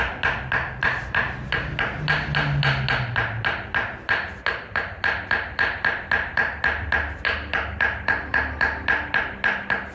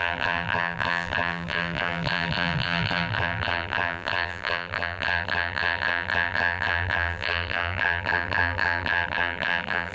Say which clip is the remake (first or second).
second